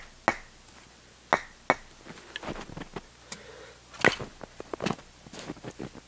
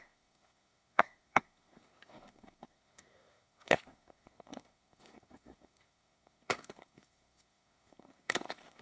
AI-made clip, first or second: second